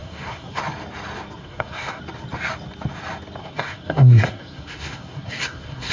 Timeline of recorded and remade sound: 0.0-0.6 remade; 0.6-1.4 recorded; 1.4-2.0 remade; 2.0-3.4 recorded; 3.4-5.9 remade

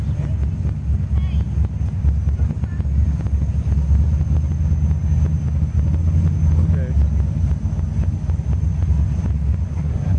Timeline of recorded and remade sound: 0.0-9.7 recorded; 9.7-10.2 remade

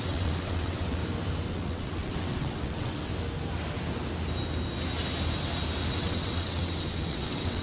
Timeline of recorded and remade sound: 0.0-1.0 remade; 1.0-1.5 recorded; 1.5-3.1 remade; 3.1-6.0 recorded; 6.0-7.6 remade

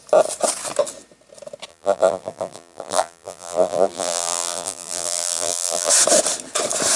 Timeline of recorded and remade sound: 0.0-1.7 recorded; 1.7-5.9 remade; 5.9-7.0 recorded

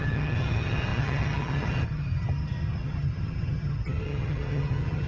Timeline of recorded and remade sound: 0.0-5.1 remade